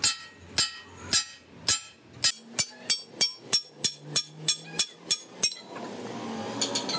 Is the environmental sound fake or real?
real